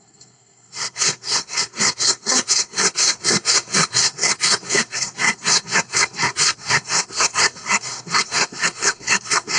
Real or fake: fake